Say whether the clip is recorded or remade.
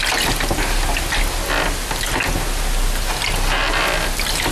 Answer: recorded